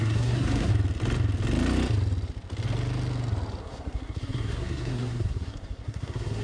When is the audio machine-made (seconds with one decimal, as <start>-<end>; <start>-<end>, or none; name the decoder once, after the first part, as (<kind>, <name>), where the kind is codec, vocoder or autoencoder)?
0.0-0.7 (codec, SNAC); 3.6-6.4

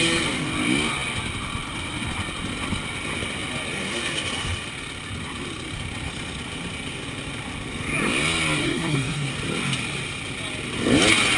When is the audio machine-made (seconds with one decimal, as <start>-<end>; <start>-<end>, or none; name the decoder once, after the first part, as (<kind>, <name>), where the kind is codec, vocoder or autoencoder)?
8.6-9.3 (codec, SNAC)

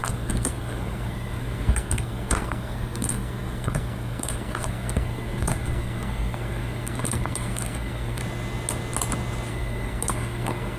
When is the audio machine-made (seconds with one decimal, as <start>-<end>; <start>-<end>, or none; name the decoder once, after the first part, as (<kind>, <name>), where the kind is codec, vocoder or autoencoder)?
0.0-8.2 (codec, SNAC); 9.5-10.8

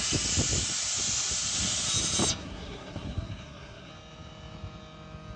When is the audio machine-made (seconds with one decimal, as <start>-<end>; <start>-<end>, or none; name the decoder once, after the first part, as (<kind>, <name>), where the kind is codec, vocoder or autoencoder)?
2.4-3.9 (codec, SNAC)